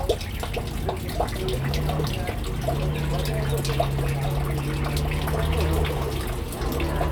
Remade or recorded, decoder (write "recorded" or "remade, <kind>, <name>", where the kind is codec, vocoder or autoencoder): recorded